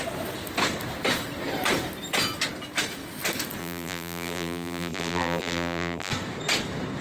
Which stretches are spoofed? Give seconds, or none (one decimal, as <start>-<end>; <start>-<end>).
3.6-6.1